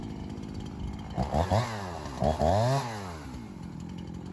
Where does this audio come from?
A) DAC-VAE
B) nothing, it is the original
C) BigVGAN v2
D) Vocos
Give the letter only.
B